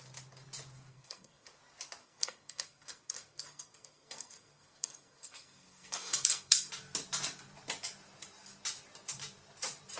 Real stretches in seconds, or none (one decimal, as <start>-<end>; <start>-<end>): 0.0-0.9; 1.5-2.0; 6.7-10.0